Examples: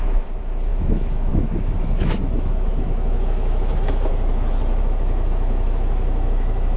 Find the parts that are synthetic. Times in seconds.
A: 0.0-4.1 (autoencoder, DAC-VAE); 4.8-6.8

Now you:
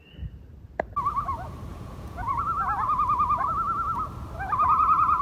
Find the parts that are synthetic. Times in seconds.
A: 1.7-2.4 (vocoder, Vocos)

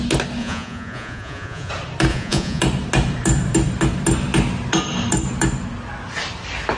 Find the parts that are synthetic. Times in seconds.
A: 0.4-1.7 (vocoder, Vocos); 2.1-2.6